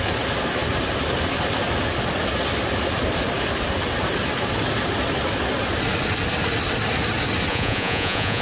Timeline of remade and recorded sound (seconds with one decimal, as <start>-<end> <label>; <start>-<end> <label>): 0.0-7.5 recorded; 7.5-8.4 remade